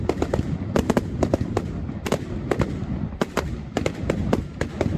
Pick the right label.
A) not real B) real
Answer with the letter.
B